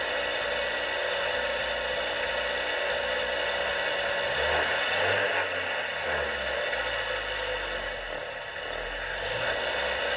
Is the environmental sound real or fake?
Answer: real